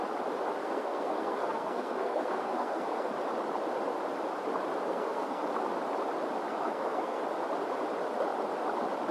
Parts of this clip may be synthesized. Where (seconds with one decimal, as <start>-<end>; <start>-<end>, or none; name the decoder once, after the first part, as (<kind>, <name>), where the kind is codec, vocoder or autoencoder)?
0.6-3.1 (codec, SNAC); 4.9-5.4; 6.5-7.2

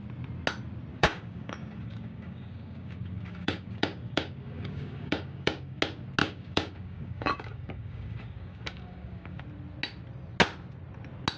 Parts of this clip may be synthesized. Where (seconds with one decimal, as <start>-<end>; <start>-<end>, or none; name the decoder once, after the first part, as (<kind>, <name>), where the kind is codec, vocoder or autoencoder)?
0.9-5.8 (codec, DAC); 6.2-9.4

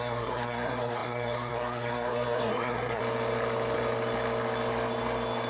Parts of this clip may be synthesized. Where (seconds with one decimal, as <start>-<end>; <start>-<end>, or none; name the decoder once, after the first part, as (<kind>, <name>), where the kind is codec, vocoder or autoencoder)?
0.0-3.0 (codec, SNAC)